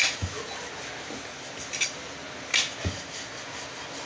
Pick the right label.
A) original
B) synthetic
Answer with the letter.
A